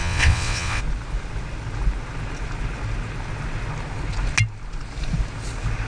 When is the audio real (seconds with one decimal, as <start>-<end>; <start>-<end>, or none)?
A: 0.8-5.9

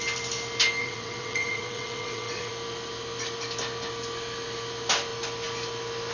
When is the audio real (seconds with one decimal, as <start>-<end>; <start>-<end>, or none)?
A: 0.0-0.8; 2.5-6.1

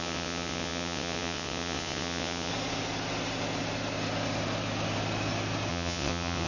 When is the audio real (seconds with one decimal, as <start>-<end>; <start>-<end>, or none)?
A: 2.5-5.7

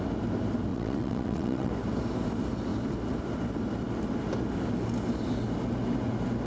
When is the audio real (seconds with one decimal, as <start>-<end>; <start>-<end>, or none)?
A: 0.0-0.7; 1.7-6.5

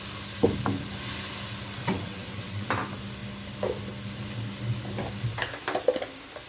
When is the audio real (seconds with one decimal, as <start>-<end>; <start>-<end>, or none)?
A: 0.0-1.8; 2.7-6.5

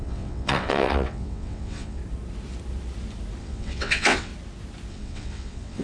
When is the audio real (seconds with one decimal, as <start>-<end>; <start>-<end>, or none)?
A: 2.0-3.4; 4.3-4.9

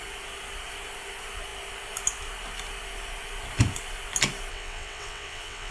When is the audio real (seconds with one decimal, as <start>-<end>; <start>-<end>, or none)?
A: 0.0-4.5